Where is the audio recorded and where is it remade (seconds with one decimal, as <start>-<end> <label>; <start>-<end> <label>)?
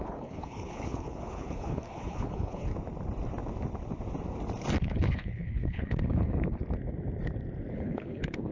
0.0-2.7 remade; 2.7-4.8 recorded; 4.8-6.6 remade; 6.6-7.7 recorded; 7.7-8.5 remade